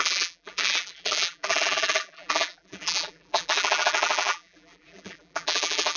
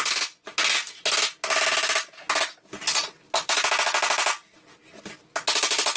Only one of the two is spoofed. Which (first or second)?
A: first